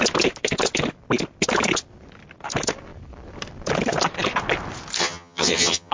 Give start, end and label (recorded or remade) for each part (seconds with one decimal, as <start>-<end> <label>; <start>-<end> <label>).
0.0-5.0 recorded; 5.0-5.9 remade